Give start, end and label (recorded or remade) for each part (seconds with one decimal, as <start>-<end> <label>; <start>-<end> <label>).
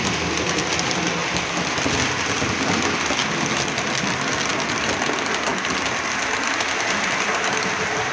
0.0-8.1 recorded